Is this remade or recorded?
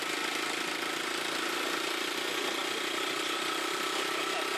recorded